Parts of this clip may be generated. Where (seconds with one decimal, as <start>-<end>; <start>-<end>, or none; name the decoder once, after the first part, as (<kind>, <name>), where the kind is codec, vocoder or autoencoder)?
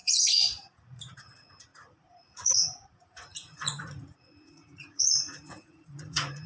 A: 0.0-6.5 (vocoder, Vocos)